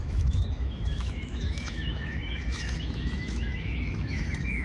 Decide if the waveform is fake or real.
fake